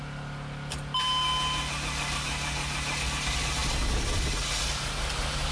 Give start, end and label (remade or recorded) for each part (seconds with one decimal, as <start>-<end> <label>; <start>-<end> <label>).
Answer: 0.0-5.5 recorded